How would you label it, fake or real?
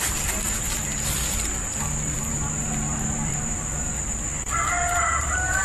fake